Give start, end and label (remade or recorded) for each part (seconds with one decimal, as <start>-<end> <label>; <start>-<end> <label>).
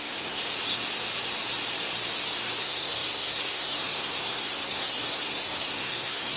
0.0-0.4 remade; 0.4-2.6 recorded; 2.6-6.4 remade